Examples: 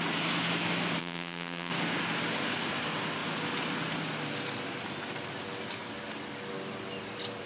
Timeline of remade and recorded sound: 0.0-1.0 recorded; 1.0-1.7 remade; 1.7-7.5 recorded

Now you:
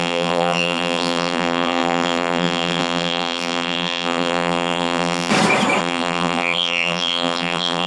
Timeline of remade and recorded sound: 0.0-5.3 remade; 5.3-5.8 recorded; 5.8-7.9 remade

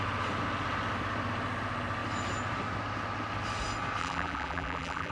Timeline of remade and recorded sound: 0.0-4.0 recorded; 4.0-5.1 remade

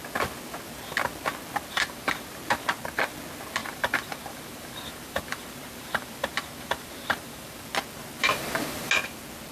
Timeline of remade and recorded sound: 0.0-1.7 recorded; 1.7-2.4 remade; 2.4-3.6 recorded; 3.6-7.6 remade; 7.6-8.2 recorded; 8.2-8.9 remade; 8.9-9.5 recorded

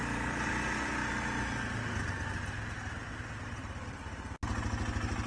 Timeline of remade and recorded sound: 0.0-0.5 remade; 0.5-3.6 recorded; 3.6-4.3 remade; 4.3-5.3 recorded

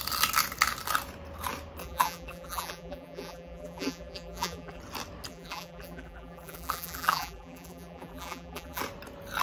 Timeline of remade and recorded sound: 0.0-1.8 recorded; 1.8-4.8 remade; 4.8-5.3 recorded; 5.3-8.8 remade; 8.8-9.4 recorded

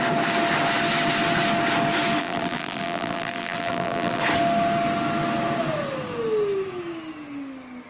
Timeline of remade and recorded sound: 0.0-2.2 recorded; 2.2-4.2 remade; 4.2-7.9 recorded